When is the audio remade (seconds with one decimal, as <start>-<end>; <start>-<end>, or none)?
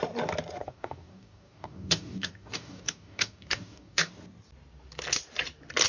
0.6-4.1